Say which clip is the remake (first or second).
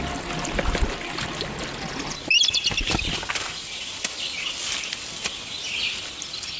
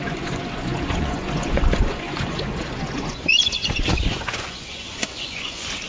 second